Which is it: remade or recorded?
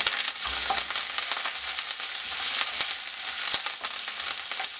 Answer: recorded